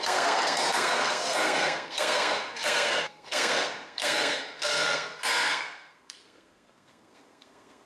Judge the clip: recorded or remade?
remade